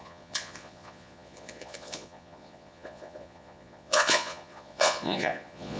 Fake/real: fake